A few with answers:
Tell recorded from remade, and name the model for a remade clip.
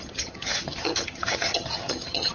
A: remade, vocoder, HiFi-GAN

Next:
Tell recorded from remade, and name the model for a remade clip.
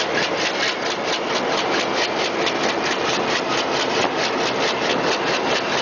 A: recorded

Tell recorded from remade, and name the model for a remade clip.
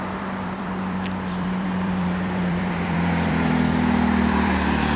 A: remade, vocoder, BigVGAN v2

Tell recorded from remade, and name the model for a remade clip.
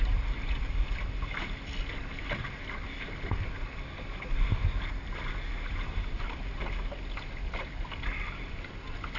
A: recorded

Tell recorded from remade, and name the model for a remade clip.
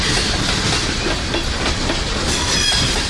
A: recorded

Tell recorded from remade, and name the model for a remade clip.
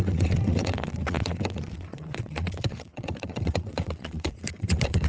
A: remade, vocoder, WaveNeXt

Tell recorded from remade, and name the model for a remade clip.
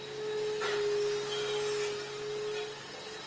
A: recorded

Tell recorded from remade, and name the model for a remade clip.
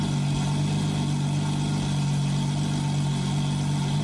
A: recorded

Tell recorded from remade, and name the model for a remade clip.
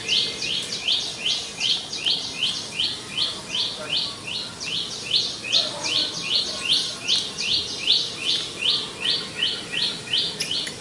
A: recorded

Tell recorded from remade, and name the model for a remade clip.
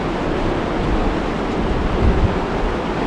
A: recorded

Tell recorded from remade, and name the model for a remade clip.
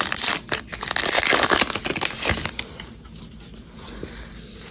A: recorded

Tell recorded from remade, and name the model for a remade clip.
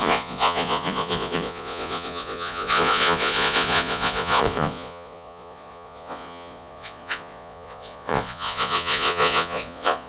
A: remade, vocoder, Vocos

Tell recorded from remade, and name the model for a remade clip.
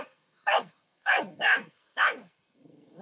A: remade, codec, SNAC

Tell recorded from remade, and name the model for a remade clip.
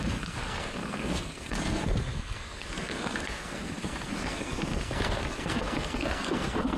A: remade, codec, SNAC